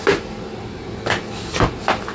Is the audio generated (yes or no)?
no